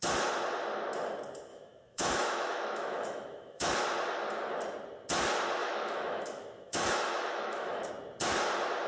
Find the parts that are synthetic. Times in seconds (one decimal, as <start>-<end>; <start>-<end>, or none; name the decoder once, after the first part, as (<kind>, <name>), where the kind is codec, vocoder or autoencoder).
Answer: 1.5-3.7 (autoencoder, DAC-VAE); 5.6-7.9